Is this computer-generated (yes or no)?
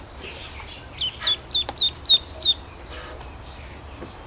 no